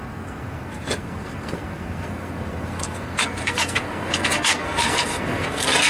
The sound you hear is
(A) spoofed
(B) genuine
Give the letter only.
A